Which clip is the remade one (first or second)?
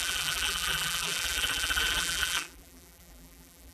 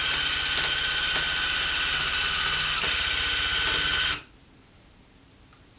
first